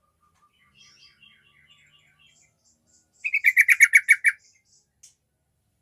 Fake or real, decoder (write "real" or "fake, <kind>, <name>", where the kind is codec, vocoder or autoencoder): real